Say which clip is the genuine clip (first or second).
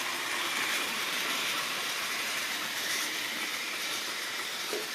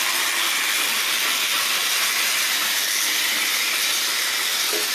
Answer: second